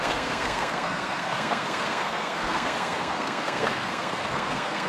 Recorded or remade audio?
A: remade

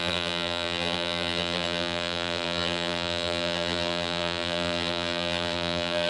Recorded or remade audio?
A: remade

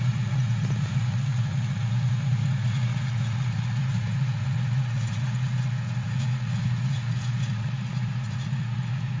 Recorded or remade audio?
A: remade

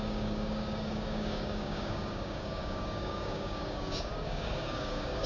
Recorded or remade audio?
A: remade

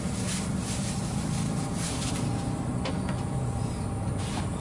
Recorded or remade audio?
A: recorded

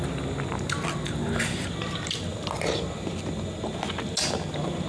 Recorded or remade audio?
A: recorded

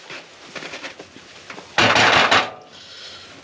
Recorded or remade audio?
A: recorded